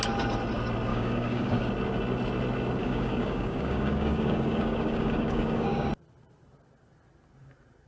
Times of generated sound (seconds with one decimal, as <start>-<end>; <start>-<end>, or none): 0.9-1.7; 2.8-5.9